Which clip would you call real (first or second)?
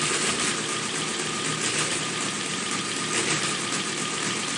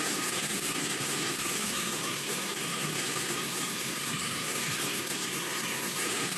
first